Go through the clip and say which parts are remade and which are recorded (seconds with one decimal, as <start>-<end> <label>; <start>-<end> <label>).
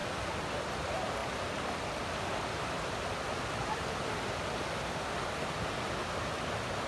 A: 0.0-6.9 recorded